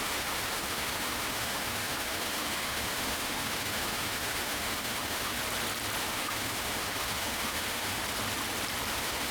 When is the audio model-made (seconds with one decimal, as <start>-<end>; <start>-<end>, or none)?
0.0-5.4; 6.0-8.0; 8.9-9.3